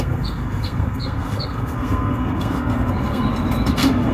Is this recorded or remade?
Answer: remade